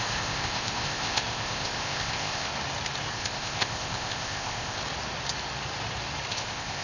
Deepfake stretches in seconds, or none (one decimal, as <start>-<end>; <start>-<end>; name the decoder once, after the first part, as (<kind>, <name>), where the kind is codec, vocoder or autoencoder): 0.0-2.5 (codec, ZipCodec); 3.1-4.8; 6.3-6.8